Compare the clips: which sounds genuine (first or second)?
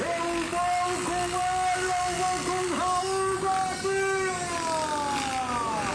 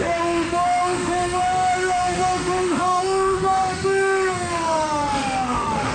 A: first